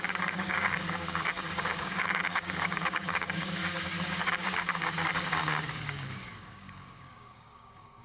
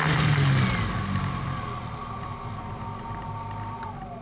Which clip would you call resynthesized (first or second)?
first